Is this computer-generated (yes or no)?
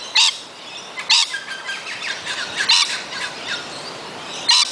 no